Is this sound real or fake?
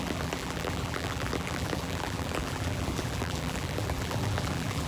fake